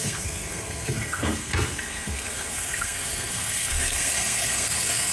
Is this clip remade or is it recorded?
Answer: remade